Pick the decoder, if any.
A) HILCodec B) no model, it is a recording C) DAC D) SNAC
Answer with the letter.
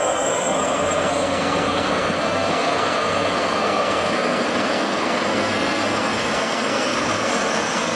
D